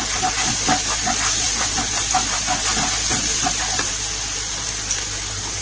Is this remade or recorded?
recorded